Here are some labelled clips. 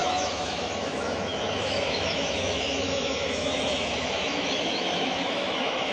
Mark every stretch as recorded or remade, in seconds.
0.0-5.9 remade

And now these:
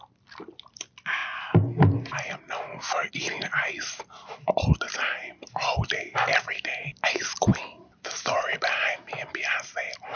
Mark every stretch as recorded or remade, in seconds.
0.0-1.2 remade; 1.2-3.1 recorded; 3.1-10.2 remade

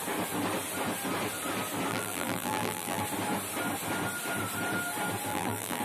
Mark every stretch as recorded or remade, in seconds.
0.0-1.9 recorded; 1.9-3.0 remade; 3.0-5.3 recorded; 5.3-5.8 remade

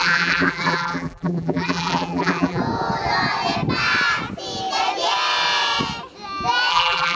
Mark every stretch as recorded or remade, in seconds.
0.0-2.6 remade; 2.6-6.7 recorded; 6.7-7.2 remade

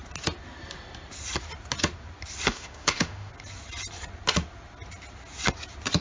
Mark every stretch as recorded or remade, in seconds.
0.0-2.5 recorded; 2.5-3.3 remade; 3.3-6.0 recorded

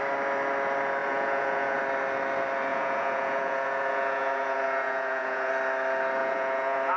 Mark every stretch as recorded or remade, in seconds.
0.0-1.0 recorded; 1.0-1.8 remade; 1.8-2.7 recorded; 2.7-5.5 remade; 5.5-6.2 recorded; 6.2-7.0 remade

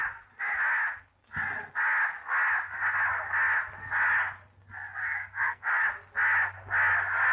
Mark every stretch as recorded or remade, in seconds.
0.0-5.0 recorded; 5.0-5.7 remade; 5.7-7.3 recorded